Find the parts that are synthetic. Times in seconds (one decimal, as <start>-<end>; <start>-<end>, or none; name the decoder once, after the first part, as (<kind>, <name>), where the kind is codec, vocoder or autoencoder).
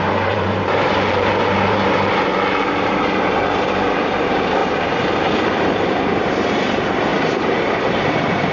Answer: 0.0-2.3 (vocoder, BigVGAN v2); 2.9-4.6; 5.2-8.5